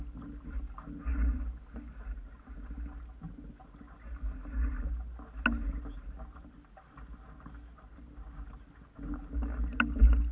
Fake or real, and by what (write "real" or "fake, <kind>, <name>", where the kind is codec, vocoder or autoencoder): real